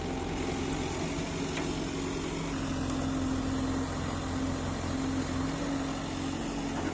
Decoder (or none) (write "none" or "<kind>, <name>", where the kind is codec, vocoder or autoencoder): none